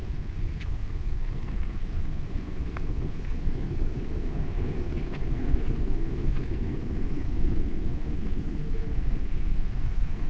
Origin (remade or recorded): remade